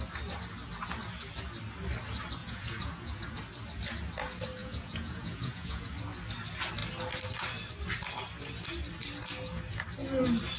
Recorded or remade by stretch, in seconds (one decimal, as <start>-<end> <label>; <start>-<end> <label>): 0.0-2.4 recorded; 2.4-3.4 remade; 3.4-4.6 recorded; 4.6-5.9 remade; 5.9-10.6 recorded